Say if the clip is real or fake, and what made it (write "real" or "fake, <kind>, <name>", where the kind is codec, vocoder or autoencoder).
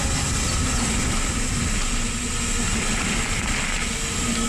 real